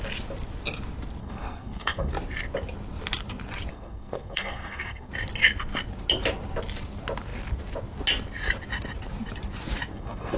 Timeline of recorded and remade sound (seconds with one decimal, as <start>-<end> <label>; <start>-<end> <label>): 0.0-1.2 recorded; 1.2-2.1 remade; 2.1-3.7 recorded; 3.7-5.1 remade; 5.1-9.9 recorded; 9.9-10.4 remade